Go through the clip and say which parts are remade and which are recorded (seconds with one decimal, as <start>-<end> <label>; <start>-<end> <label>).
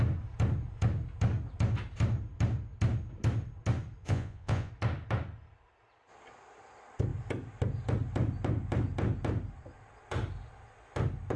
0.0-4.0 recorded; 4.0-4.7 remade; 4.7-11.4 recorded